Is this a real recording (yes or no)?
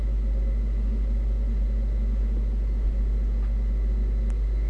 yes